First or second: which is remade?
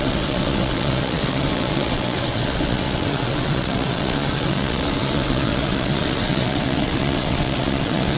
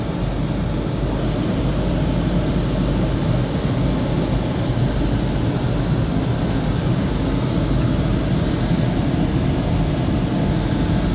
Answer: first